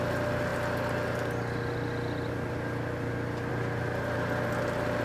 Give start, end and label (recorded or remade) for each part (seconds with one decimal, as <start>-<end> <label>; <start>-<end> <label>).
0.0-5.0 recorded